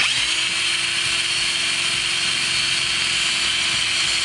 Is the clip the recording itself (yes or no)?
yes